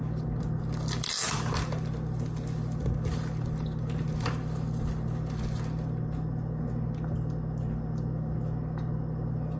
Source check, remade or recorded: recorded